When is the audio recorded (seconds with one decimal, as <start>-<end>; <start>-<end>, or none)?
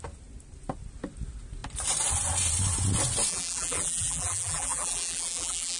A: 0.0-3.3